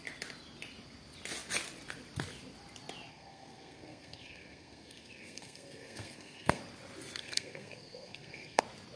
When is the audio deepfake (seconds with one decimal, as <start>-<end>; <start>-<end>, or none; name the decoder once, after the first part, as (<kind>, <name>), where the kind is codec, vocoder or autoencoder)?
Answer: 3.1-6.6 (codec, SNAC); 7.2-8.6